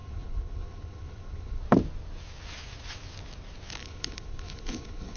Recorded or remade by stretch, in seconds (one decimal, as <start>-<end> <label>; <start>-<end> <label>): 0.0-1.6 remade; 1.6-3.8 recorded; 3.8-5.2 remade